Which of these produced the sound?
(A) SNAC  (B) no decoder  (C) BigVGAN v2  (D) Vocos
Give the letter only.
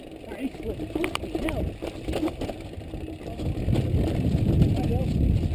B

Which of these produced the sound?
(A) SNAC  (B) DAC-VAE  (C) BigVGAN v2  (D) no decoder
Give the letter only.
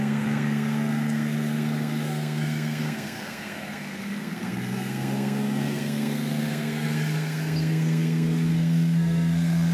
A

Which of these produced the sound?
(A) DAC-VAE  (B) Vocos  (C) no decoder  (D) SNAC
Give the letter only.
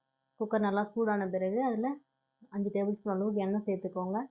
C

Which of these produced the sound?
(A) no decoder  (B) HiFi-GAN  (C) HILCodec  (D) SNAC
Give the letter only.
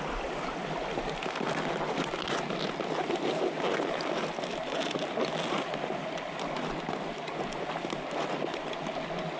A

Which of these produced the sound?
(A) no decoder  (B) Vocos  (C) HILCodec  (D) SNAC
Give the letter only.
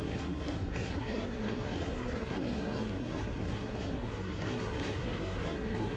D